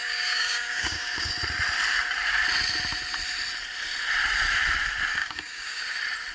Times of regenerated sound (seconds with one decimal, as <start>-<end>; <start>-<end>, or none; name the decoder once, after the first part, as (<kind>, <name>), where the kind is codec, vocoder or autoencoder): 0.0-1.3 (codec, DAC); 5.2-5.8